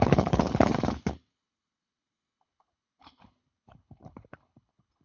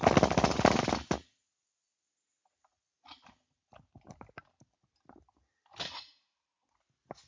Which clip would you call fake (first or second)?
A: first